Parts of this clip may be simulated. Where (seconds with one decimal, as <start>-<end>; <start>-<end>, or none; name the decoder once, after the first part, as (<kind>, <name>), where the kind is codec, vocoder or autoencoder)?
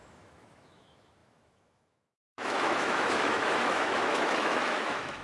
0.0-5.2 (autoencoder, DAC-VAE)